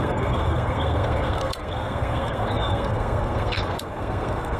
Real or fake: fake